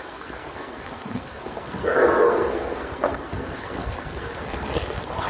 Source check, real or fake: fake